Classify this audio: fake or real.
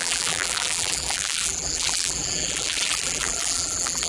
fake